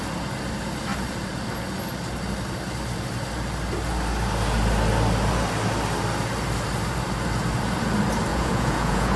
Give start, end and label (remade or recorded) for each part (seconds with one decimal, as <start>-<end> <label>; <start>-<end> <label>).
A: 0.0-8.3 recorded; 8.3-9.2 remade